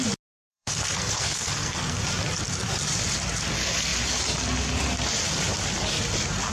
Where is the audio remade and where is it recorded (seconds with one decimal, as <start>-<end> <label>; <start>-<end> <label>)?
0.0-0.5 recorded; 0.5-2.0 remade; 2.0-6.5 recorded